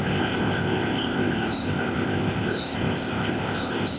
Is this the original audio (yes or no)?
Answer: no